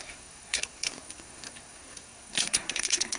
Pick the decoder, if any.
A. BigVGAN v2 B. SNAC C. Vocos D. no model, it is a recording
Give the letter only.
B